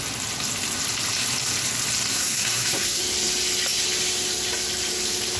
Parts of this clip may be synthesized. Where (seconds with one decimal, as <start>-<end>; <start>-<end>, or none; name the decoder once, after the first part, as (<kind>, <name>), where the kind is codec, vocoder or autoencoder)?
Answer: 2.1-3.0 (codec, SNAC)